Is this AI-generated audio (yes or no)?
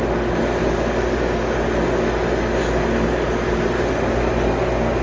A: no